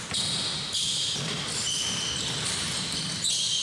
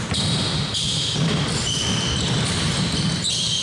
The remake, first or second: second